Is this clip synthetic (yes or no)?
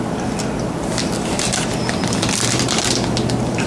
no